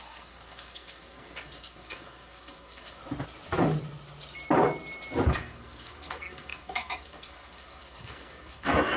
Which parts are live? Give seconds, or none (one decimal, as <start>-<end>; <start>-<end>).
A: 3.0-5.3